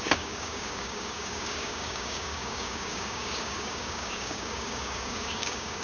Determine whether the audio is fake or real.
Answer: fake